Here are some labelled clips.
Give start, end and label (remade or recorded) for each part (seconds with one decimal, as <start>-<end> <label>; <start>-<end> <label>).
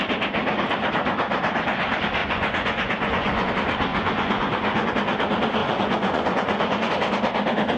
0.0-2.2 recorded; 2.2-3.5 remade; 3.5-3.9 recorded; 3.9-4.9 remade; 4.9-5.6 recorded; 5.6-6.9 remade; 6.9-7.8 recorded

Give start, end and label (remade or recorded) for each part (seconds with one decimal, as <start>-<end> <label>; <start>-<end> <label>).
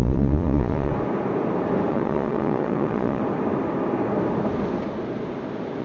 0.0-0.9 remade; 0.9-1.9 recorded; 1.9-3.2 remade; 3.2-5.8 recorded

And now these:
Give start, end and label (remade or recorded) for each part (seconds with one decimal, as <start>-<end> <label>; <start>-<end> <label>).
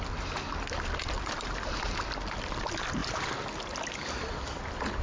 0.0-5.0 recorded